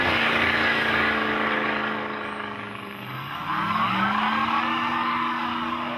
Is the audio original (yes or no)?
no